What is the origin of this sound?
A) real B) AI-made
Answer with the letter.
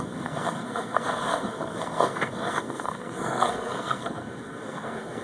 B